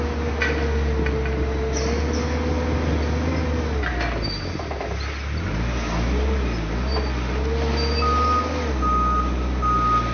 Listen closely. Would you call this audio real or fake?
real